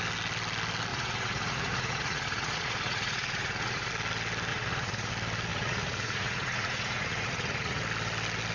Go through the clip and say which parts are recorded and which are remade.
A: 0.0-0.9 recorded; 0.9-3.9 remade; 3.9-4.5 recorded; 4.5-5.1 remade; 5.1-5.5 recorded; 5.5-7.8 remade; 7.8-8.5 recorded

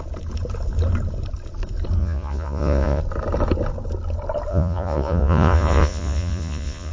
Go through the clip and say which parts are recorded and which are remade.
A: 0.0-2.0 recorded; 2.0-3.0 remade; 3.0-4.5 recorded; 4.5-6.9 remade

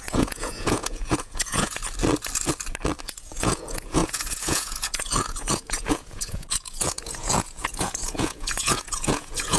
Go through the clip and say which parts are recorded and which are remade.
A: 0.0-1.8 remade; 1.8-3.0 recorded; 3.0-9.6 remade